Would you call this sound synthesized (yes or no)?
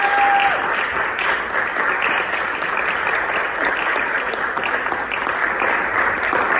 no